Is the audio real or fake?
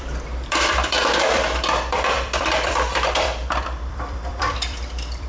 fake